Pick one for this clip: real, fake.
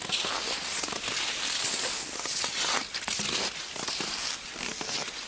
real